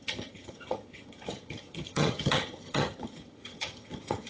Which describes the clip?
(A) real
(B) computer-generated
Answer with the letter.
B